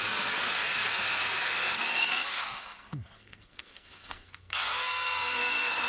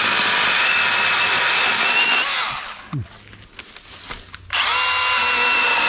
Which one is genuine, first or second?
second